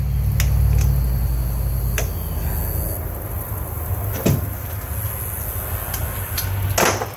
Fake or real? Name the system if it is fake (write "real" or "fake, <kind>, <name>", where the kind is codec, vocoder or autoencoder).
real